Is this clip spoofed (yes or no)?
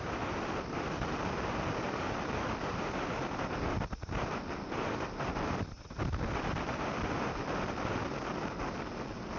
no